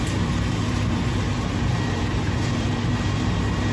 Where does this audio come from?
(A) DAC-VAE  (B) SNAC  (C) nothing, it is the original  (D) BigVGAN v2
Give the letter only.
D